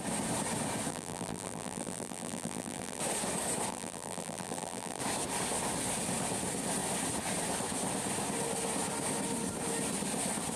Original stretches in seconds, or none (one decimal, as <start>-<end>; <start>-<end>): 0.0-0.9; 3.0-3.7; 5.0-10.6